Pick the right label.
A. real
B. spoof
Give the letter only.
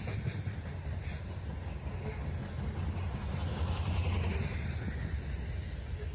A